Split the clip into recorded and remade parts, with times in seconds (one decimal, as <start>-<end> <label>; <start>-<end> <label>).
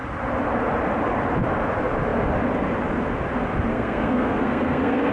0.0-3.7 recorded; 3.7-5.1 remade